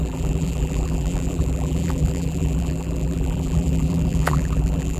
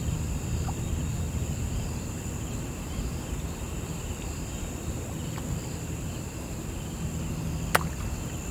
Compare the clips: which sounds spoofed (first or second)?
first